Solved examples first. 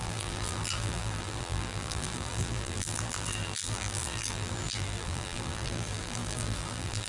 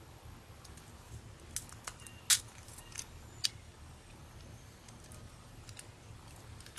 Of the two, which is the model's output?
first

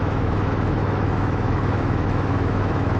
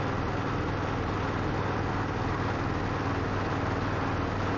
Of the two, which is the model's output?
first